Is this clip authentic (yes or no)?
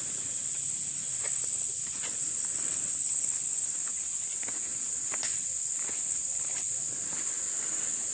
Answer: yes